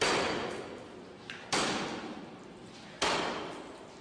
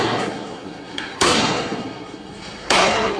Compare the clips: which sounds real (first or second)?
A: first